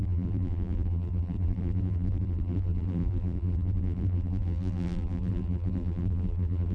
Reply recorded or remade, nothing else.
remade